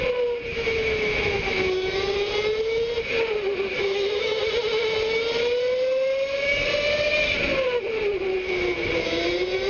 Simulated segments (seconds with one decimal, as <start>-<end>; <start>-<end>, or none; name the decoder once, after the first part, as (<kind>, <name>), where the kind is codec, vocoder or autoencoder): 0.5-1.9 (autoencoder, DAC-VAE); 3.8-4.4